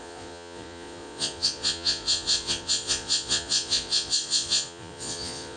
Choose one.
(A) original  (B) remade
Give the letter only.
B